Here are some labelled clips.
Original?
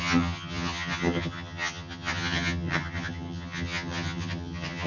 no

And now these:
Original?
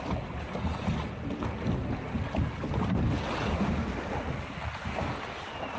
yes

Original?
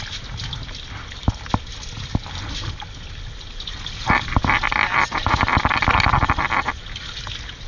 yes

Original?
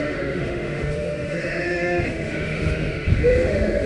no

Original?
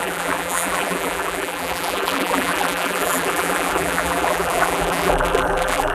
no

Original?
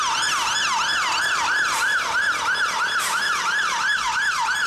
yes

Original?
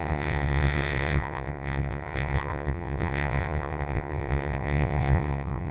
no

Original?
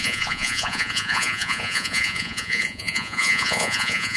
no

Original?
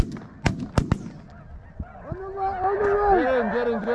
yes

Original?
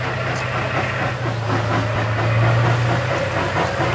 yes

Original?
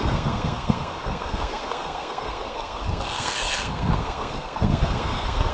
no